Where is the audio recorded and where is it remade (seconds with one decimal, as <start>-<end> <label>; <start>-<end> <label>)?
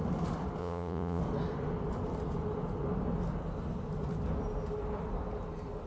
0.0-0.6 recorded; 0.6-1.2 remade; 1.2-5.9 recorded